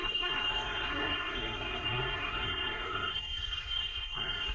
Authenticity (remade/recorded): remade